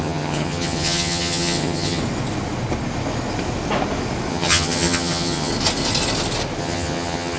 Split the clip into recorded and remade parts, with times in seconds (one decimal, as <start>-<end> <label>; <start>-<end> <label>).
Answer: 0.0-2.0 remade; 2.0-4.3 recorded; 4.3-5.5 remade; 5.5-6.6 recorded; 6.6-7.4 remade